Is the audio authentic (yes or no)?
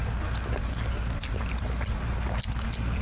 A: yes